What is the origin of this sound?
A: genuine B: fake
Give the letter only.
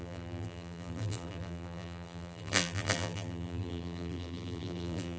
B